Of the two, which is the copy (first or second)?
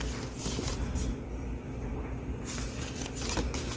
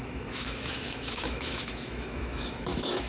second